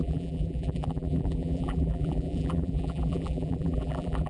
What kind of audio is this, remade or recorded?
remade